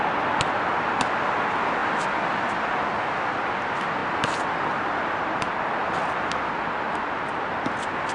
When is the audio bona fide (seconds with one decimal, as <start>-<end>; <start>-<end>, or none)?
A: 0.0-8.1